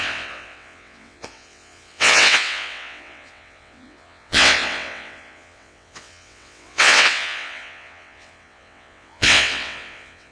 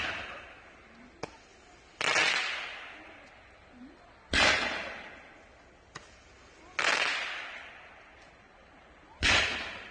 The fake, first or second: first